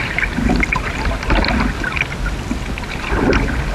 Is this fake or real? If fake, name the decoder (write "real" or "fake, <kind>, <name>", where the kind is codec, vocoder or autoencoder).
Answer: real